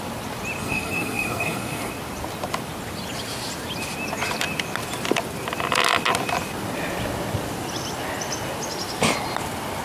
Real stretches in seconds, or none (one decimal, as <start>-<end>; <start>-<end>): 0.0-0.6; 1.9-9.8